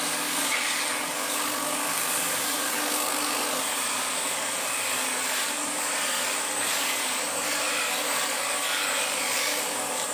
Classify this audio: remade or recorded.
remade